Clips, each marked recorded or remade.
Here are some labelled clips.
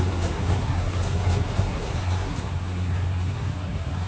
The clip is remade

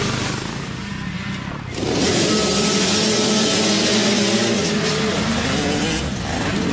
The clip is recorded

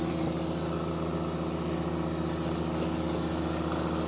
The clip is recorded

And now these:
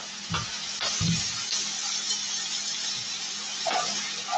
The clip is recorded